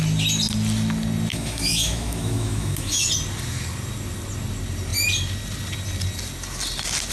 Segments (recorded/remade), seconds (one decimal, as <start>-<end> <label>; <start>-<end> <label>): 0.0-1.3 recorded; 1.3-3.1 remade; 3.1-7.1 recorded